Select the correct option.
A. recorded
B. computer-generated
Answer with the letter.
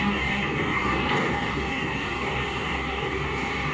B